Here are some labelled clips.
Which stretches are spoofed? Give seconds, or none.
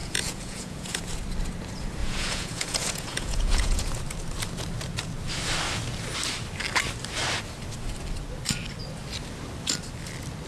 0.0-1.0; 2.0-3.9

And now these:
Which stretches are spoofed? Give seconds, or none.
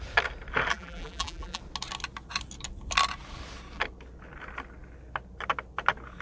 0.7-1.6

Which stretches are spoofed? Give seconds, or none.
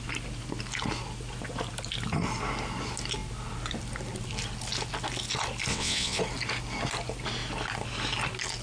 5.7-6.2